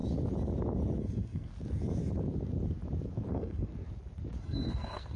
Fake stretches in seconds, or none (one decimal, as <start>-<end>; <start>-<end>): 1.0-1.5; 3.3-3.7; 4.4-5.2